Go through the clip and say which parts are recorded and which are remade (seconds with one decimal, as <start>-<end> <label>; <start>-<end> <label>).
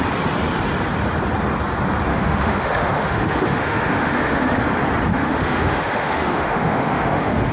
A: 0.0-2.1 recorded; 2.1-4.6 remade; 4.6-5.1 recorded; 5.1-7.5 remade